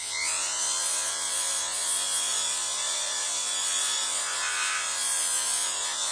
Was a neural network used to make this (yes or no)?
yes